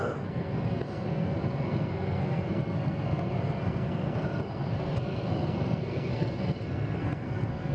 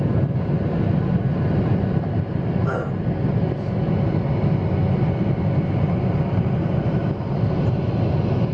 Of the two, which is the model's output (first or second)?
first